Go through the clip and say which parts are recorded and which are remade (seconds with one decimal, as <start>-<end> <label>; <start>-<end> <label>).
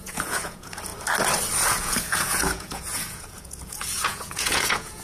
0.0-0.9 remade; 0.9-1.7 recorded; 1.7-5.0 remade